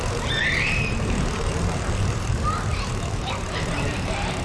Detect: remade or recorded remade